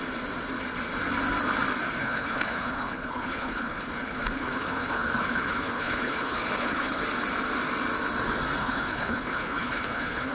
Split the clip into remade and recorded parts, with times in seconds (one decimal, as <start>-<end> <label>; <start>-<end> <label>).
0.0-2.0 recorded; 2.0-7.0 remade; 7.0-8.6 recorded; 8.6-10.3 remade